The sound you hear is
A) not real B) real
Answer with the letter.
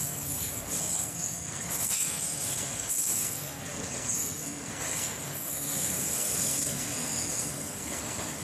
A